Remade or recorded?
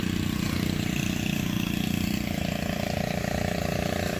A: recorded